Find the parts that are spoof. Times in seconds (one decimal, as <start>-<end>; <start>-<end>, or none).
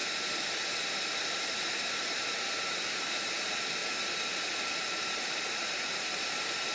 0.9-3.8; 4.7-6.7